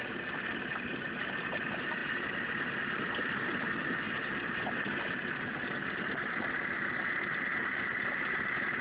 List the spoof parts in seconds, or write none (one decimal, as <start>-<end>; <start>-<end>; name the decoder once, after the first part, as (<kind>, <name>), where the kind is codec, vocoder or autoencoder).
none